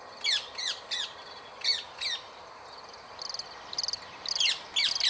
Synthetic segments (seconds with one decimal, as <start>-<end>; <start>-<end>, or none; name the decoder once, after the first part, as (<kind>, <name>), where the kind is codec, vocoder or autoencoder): none